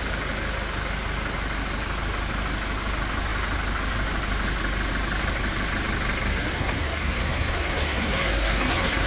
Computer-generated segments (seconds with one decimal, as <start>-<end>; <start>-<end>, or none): 6.3-9.1